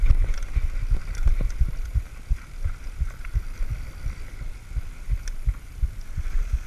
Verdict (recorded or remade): remade